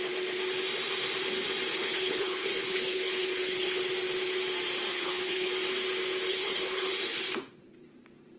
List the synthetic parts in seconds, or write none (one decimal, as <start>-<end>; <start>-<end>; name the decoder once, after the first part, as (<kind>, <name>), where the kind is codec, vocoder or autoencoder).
1.7-3.8 (codec, HILCodec); 4.9-5.5; 6.3-6.9